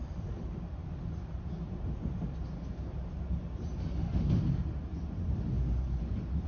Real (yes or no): yes